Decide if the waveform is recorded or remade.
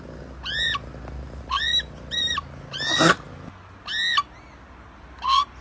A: recorded